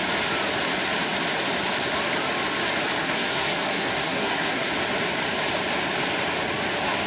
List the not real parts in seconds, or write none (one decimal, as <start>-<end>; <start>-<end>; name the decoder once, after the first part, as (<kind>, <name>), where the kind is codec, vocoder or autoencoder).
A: 3.0-4.7 (codec, SNAC)